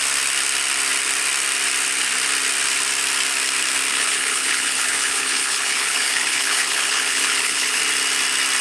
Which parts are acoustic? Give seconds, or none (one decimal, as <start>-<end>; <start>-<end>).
0.0-3.9; 7.8-8.6